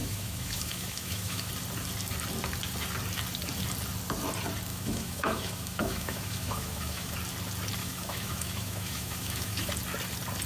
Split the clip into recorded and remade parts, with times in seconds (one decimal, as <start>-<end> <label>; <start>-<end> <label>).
0.0-1.5 remade; 1.5-4.7 recorded; 4.7-7.1 remade; 7.1-7.8 recorded; 7.8-9.7 remade; 9.7-10.5 recorded